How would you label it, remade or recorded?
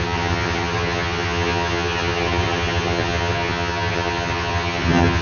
remade